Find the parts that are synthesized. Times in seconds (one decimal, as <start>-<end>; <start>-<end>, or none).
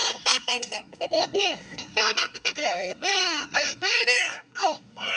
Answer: 0.0-5.2